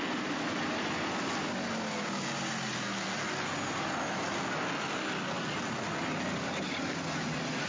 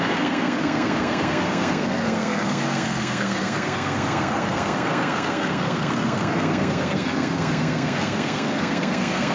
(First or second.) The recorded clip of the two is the first